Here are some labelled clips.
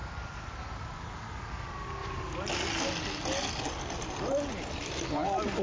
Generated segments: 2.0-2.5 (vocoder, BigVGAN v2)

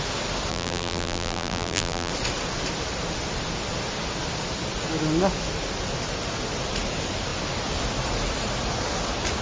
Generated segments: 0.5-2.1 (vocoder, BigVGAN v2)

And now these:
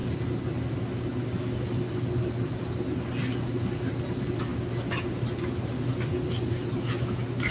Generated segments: none

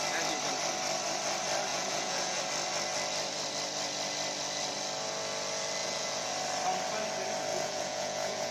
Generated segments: 1.7-2.4 (vocoder, Vocos); 5.8-6.3; 7.5-8.5

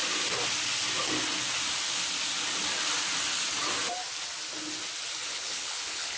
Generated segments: 5.3-6.2 (codec, HILCodec)